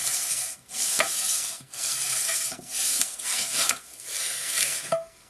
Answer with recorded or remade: remade